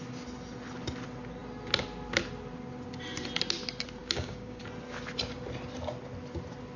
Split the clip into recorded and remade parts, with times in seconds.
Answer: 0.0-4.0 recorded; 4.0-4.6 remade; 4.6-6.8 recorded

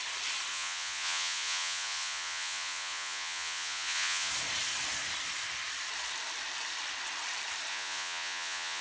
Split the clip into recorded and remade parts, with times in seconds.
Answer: 0.0-0.5 recorded; 0.5-4.3 remade; 4.3-7.7 recorded; 7.7-8.8 remade

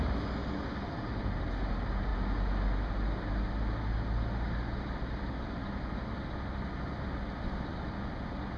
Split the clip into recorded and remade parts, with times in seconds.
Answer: 0.0-8.6 recorded

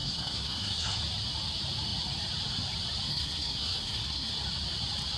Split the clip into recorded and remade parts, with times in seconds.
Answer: 0.0-1.0 remade; 1.0-3.1 recorded; 3.1-4.3 remade; 4.3-5.2 recorded